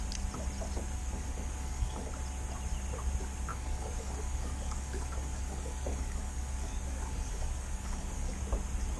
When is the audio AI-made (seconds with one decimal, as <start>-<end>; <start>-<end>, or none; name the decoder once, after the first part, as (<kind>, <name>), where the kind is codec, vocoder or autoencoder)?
1.0-2.1 (codec, DAC); 3.5-8.4